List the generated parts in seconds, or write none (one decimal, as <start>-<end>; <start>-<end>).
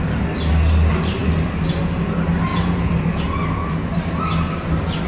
1.2-1.7; 2.5-3.2; 3.6-4.2